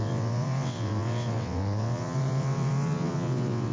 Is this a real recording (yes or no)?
no